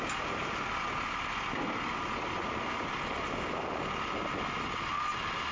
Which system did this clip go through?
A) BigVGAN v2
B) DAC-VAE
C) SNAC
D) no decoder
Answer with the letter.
D